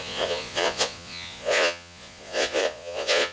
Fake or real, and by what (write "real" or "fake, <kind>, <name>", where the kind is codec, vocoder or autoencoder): fake, vocoder, Vocos